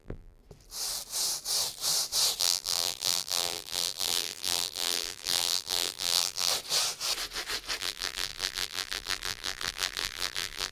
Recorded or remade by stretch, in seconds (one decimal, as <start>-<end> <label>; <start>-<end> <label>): 0.0-0.4 remade; 0.4-2.4 recorded; 2.4-6.5 remade; 6.5-7.8 recorded; 7.8-10.7 remade